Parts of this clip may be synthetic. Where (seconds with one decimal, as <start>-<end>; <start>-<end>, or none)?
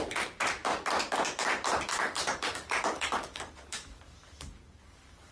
2.0-5.3